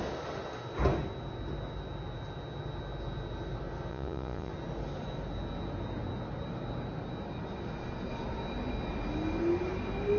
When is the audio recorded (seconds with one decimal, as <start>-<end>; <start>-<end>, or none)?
0.0-3.9; 4.5-10.2